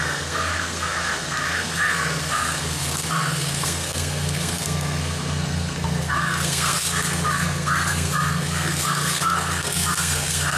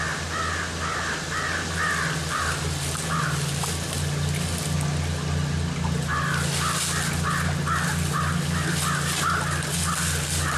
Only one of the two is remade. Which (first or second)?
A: first